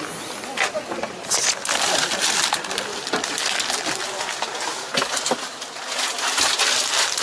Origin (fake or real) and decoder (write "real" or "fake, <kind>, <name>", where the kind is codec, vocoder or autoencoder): real